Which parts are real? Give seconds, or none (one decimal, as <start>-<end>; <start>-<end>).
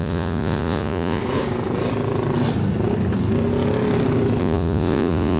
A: 1.2-4.4